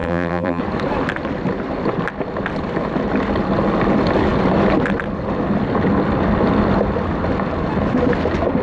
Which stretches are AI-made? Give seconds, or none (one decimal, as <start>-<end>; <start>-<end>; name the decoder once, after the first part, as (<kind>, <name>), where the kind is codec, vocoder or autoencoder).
0.0-0.6 (vocoder, BigVGAN v2)